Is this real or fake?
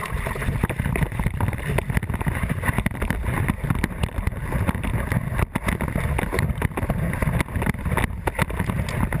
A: real